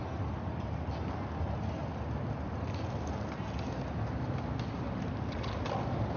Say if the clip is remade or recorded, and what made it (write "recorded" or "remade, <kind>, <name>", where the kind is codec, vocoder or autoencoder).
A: recorded